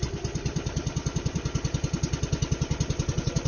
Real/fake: real